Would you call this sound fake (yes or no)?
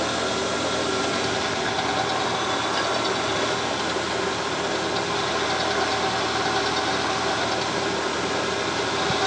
no